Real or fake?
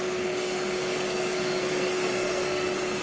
fake